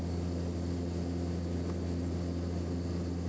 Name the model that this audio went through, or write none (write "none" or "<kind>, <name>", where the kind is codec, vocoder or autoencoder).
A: none